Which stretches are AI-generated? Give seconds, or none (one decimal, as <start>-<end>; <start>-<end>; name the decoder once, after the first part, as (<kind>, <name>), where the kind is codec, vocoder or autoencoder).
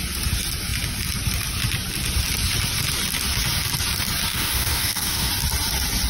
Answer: 4.3-5.3 (codec, DAC)